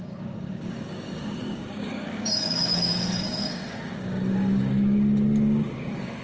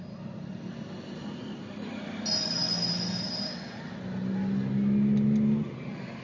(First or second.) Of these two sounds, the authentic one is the second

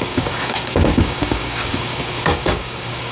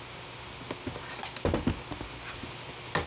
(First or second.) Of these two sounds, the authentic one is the second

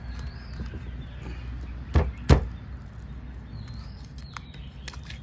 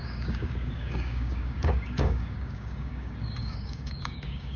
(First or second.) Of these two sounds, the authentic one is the first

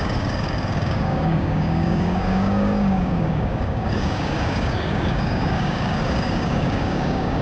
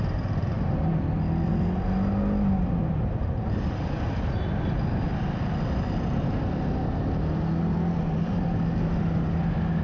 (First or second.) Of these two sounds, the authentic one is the second